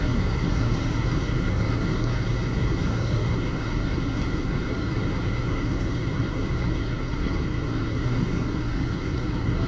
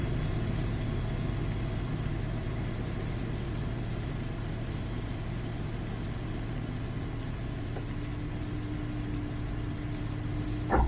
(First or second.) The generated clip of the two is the first